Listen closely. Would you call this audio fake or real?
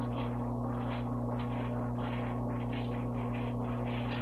real